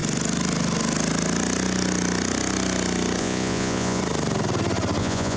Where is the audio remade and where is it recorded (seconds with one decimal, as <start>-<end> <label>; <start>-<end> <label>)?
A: 0.0-3.2 recorded; 3.2-4.0 remade; 4.0-5.0 recorded; 5.0-5.4 remade